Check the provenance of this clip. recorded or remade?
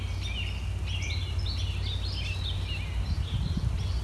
recorded